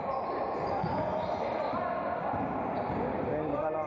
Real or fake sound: real